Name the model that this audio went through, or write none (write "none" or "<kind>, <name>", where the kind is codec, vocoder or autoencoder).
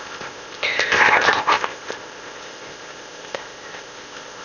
codec, ZipCodec